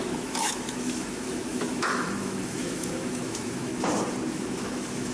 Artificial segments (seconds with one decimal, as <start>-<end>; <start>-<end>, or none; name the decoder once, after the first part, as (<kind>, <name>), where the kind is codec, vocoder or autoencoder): 0.0-3.7 (autoencoder, DAC-VAE); 4.3-5.1